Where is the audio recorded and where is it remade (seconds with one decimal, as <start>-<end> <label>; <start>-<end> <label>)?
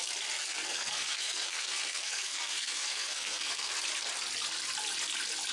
0.0-0.4 recorded; 0.4-3.7 remade; 3.7-5.5 recorded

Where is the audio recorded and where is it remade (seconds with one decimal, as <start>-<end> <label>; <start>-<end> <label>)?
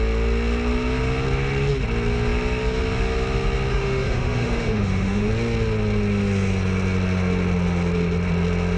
0.0-3.7 recorded; 3.7-5.3 remade; 5.3-8.8 recorded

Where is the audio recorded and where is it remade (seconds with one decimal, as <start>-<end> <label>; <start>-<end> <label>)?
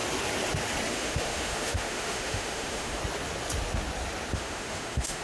0.0-0.9 recorded; 0.9-3.0 remade; 3.0-4.3 recorded; 4.3-5.2 remade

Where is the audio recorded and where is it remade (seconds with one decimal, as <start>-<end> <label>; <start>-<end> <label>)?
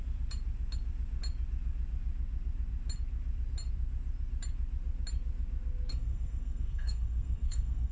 0.0-5.9 recorded; 5.9-7.9 remade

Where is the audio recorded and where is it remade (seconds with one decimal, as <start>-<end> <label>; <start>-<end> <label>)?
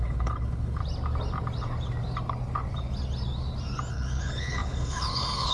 0.0-0.8 remade; 0.8-3.9 recorded; 3.9-5.5 remade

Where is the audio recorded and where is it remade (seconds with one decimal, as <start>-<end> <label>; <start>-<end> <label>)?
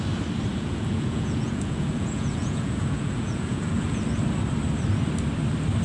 0.0-0.5 recorded; 0.5-4.0 remade; 4.0-5.8 recorded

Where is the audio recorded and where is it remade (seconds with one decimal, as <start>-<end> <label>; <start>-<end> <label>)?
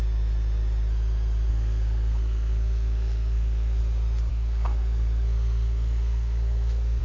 0.0-1.5 recorded; 1.5-3.8 remade; 3.8-4.3 recorded; 4.3-7.0 remade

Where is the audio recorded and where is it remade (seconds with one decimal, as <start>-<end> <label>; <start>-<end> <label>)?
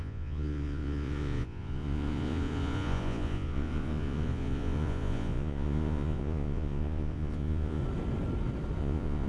0.0-7.8 remade; 7.8-8.8 recorded; 8.8-9.3 remade